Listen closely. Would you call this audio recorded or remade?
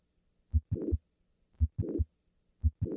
recorded